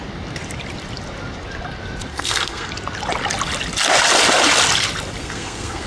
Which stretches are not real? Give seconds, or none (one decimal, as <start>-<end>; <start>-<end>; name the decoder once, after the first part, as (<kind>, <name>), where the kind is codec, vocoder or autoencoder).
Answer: 2.1-2.7 (codec, SNAC); 5.2-5.9